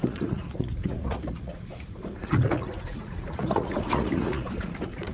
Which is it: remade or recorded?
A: remade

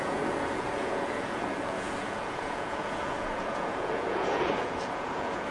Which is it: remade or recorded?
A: remade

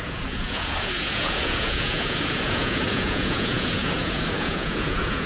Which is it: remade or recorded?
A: remade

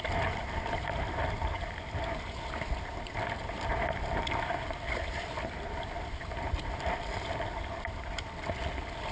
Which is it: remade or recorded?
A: recorded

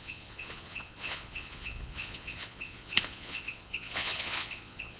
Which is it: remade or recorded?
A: remade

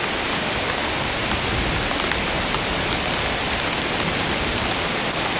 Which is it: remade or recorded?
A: recorded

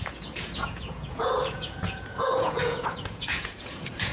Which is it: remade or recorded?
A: remade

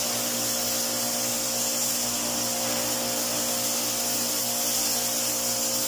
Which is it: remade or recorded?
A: recorded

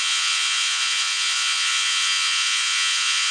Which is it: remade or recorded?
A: remade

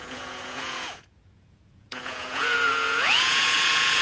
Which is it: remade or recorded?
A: remade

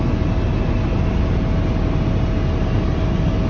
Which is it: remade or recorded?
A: recorded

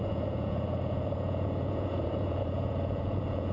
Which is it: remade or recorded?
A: remade